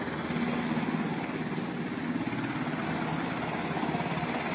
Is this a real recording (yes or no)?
yes